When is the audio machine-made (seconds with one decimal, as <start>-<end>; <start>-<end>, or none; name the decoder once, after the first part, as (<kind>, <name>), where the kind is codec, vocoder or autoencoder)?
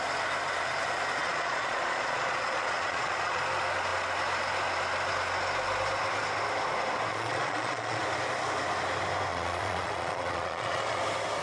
1.2-3.4 (vocoder, Vocos); 7.1-8.0; 9.3-11.0